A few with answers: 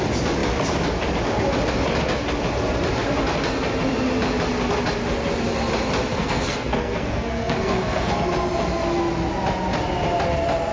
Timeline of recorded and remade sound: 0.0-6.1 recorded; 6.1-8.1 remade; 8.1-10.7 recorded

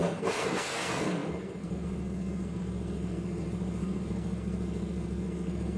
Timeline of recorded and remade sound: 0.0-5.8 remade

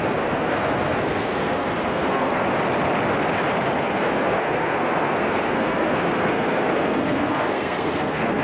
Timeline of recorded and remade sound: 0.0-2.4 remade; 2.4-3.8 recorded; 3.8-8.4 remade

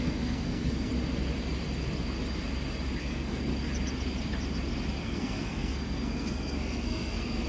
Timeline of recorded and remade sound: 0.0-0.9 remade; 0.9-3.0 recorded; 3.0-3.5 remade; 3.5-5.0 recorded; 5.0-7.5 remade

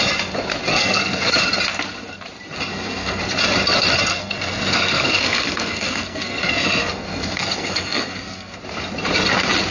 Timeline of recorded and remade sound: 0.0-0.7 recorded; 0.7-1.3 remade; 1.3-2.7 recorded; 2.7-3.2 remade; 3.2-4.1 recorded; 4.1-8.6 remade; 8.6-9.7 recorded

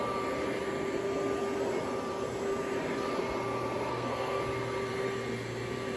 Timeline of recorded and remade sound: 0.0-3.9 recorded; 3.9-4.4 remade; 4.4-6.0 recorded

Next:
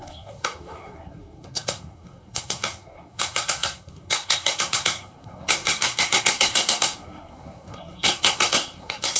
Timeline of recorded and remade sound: 0.0-9.2 remade

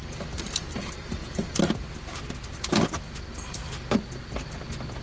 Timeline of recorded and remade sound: 0.0-5.0 recorded